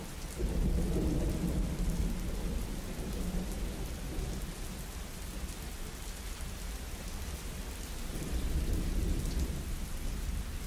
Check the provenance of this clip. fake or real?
real